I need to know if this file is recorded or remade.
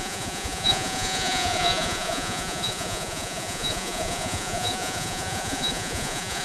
remade